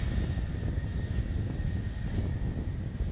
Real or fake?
real